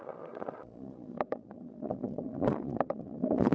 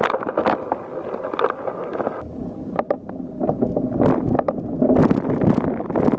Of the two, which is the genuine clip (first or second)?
second